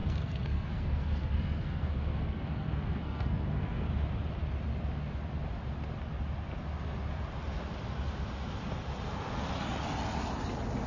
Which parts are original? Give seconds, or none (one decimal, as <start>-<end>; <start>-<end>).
3.9-10.9